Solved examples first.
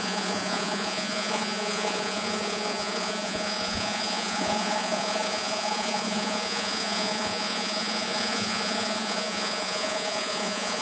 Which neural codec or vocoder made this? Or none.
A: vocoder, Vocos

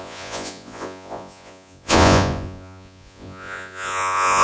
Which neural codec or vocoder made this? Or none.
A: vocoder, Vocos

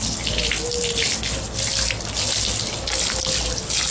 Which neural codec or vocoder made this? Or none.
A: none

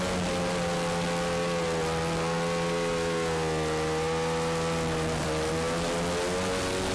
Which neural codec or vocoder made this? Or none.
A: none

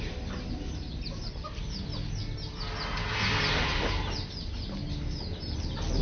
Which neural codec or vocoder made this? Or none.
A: none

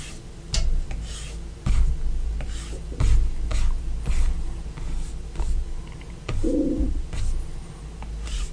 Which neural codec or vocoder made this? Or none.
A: none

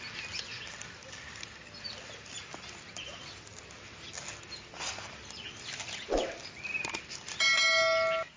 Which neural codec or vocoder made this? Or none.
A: none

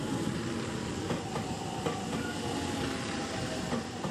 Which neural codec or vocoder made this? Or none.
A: none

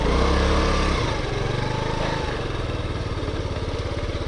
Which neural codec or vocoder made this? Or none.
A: none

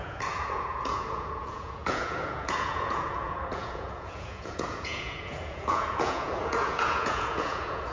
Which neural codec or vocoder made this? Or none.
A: vocoder, Vocos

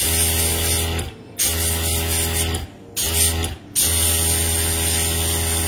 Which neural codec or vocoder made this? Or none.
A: none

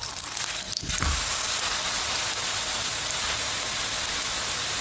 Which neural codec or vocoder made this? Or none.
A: none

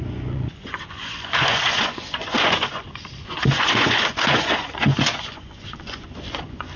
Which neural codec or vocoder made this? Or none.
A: vocoder, Vocos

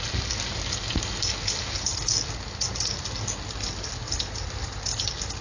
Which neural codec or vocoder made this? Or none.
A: none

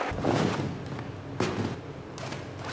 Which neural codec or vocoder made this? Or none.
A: none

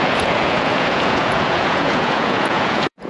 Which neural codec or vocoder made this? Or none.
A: vocoder, Vocos